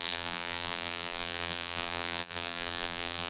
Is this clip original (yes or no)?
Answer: no